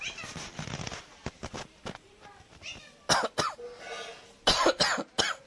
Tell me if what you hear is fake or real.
real